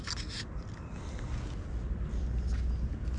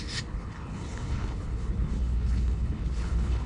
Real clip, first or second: first